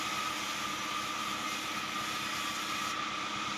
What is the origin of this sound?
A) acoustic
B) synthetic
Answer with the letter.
A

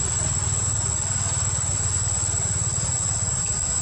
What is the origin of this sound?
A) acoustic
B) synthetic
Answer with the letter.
A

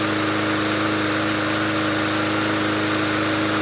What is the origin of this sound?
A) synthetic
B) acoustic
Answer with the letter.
B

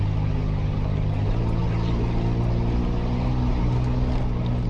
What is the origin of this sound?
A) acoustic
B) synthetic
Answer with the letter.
A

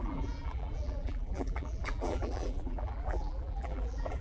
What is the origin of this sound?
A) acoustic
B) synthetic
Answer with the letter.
B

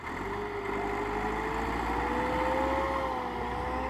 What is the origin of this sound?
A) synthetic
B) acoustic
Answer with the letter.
B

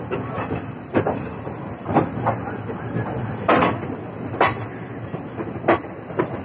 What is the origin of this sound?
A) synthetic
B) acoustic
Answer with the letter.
B